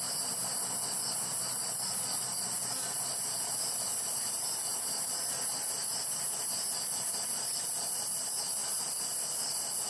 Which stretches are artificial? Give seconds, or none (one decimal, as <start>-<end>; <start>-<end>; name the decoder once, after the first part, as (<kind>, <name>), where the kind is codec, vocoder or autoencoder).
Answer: none